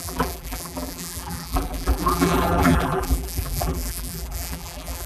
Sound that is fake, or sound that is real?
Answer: fake